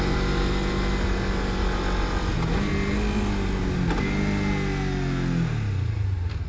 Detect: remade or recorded recorded